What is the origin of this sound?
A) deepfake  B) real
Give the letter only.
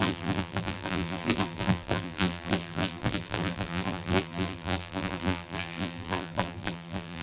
A